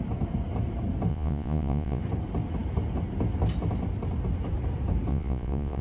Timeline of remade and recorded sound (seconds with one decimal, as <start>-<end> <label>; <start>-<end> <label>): 0.0-1.1 recorded; 1.1-2.0 remade; 2.0-5.1 recorded; 5.1-5.8 remade